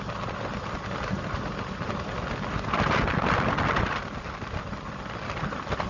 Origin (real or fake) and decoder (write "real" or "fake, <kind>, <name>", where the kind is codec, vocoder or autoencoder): real